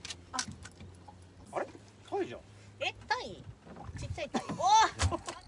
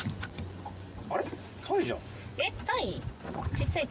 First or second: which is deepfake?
second